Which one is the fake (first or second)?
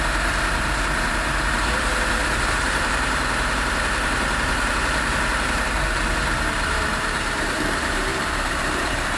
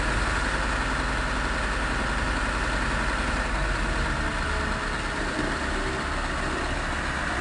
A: first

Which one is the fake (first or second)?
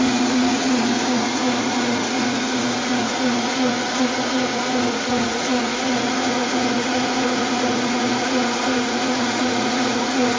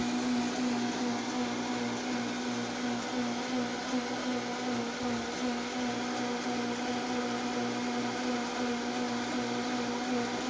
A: first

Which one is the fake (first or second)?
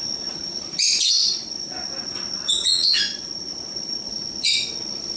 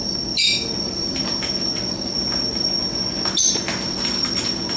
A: first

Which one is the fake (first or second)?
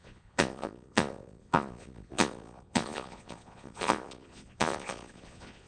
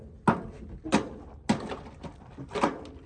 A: first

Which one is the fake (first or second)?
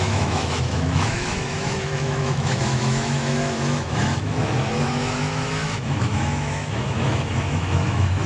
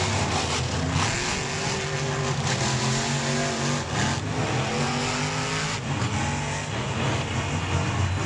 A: first